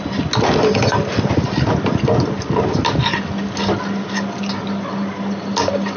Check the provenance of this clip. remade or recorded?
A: recorded